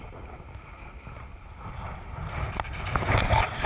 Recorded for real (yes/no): yes